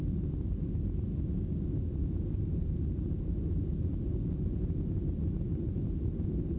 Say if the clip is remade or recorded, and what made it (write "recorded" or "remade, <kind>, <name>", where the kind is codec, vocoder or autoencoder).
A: recorded